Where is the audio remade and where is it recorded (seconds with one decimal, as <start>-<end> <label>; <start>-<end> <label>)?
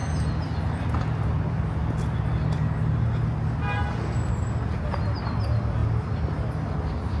0.0-7.2 recorded